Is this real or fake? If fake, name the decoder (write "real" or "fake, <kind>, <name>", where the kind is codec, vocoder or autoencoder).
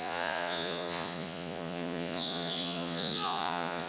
fake, vocoder, Vocos